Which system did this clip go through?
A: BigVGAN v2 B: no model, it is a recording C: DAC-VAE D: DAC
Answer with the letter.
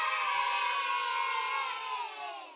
B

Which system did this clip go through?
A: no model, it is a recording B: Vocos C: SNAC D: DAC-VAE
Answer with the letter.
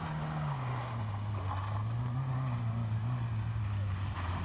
A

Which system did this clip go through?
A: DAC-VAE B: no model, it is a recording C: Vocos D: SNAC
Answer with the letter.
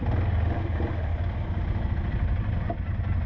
B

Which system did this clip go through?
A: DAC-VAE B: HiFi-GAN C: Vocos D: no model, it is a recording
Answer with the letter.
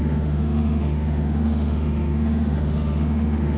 A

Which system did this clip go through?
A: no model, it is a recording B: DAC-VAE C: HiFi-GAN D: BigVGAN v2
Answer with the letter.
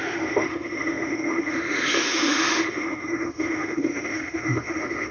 B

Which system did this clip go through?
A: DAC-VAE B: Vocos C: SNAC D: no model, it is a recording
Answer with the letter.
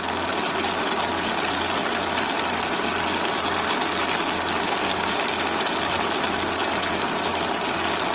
D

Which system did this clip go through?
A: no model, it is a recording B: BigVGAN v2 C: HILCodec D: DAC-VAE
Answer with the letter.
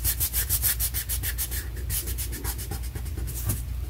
A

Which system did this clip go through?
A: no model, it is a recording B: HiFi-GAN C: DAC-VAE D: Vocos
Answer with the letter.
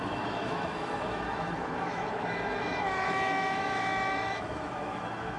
C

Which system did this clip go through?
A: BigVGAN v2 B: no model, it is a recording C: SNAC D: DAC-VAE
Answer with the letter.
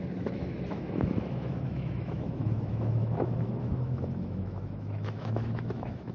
D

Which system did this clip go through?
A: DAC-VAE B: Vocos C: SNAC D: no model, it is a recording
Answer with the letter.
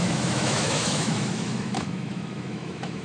A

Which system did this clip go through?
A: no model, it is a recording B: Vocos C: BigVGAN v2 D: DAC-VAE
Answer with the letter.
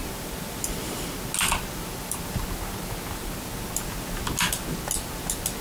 A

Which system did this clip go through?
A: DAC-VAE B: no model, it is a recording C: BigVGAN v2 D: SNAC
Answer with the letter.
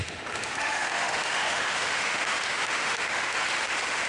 A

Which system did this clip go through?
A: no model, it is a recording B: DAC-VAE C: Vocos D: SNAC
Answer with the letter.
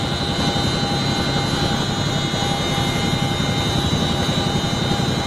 A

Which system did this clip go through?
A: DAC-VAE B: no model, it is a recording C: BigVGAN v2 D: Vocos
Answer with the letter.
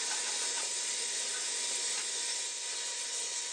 B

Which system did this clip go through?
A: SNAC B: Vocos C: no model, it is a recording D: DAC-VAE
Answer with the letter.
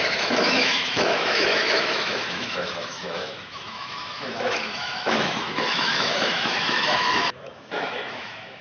D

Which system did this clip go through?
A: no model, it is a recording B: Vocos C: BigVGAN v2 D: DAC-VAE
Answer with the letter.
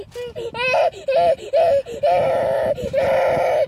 A